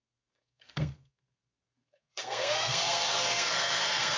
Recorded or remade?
remade